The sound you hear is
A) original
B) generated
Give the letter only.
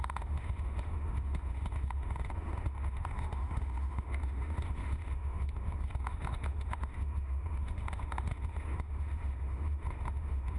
B